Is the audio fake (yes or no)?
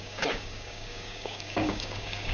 yes